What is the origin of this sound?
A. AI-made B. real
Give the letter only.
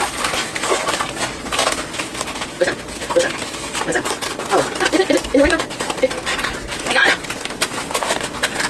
B